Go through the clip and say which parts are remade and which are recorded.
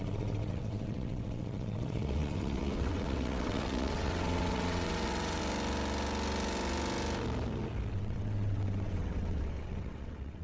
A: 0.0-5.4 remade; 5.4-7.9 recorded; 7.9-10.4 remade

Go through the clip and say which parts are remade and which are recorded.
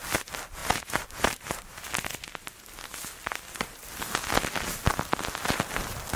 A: 0.0-0.6 recorded; 0.6-1.6 remade; 1.6-6.2 recorded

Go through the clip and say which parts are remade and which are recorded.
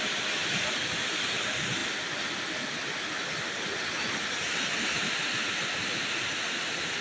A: 0.0-7.0 recorded